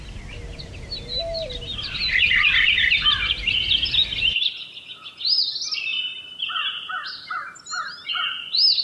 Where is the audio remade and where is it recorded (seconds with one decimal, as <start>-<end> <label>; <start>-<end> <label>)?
0.0-8.8 recorded

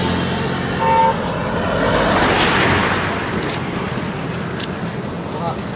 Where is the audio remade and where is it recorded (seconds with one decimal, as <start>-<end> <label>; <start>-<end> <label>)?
0.0-2.8 recorded; 2.8-3.4 remade; 3.4-5.8 recorded

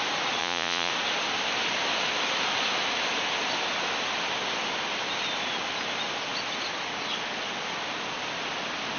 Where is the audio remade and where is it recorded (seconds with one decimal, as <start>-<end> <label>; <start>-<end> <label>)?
0.0-0.4 recorded; 0.4-0.9 remade; 0.9-9.0 recorded

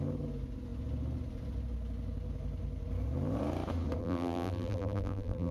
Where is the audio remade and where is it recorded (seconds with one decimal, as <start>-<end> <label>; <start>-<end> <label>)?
0.0-4.0 recorded; 4.0-5.5 remade

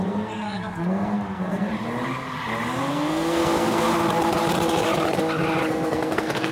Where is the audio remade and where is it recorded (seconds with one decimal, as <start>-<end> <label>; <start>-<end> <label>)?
0.0-1.7 remade; 1.7-2.8 recorded; 2.8-3.9 remade; 3.9-5.7 recorded; 5.7-6.5 remade

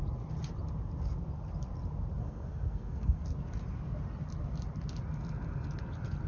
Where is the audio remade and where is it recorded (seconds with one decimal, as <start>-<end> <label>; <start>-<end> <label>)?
0.0-2.2 recorded; 2.2-3.2 remade; 3.2-6.3 recorded